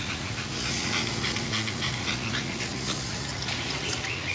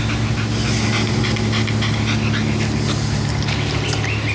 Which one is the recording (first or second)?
second